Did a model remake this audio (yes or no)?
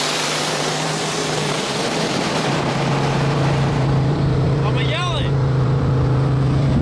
yes